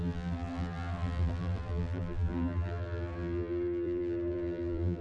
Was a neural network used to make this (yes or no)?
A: yes